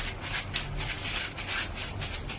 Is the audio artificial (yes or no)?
no